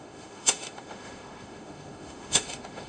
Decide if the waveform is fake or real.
fake